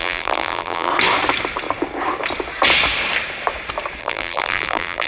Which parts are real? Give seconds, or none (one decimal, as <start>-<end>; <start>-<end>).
0.9-4.0

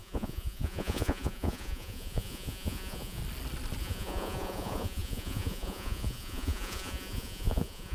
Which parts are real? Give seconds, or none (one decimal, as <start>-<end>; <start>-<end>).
3.2-3.8

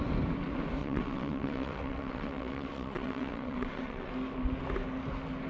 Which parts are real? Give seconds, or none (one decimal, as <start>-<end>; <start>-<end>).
0.0-0.8; 4.1-5.5

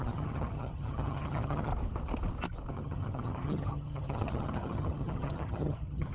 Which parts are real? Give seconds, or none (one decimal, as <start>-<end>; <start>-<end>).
1.7-2.7